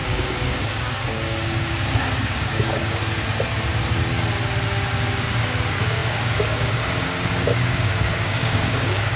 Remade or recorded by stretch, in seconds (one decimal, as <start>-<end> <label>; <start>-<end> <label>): 0.0-3.0 remade; 3.0-5.4 recorded; 5.4-9.2 remade